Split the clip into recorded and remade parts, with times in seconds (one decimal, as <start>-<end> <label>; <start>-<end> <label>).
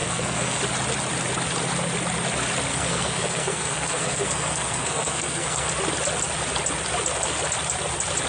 0.0-0.6 remade; 0.6-2.7 recorded; 2.7-5.7 remade; 5.7-8.3 recorded